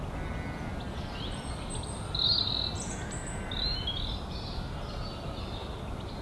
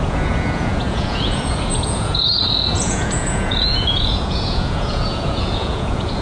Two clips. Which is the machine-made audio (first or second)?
second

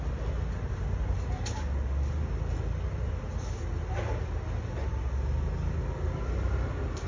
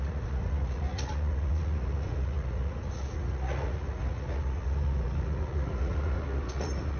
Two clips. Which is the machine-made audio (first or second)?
second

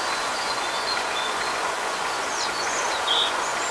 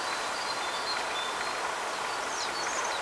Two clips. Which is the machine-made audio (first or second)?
first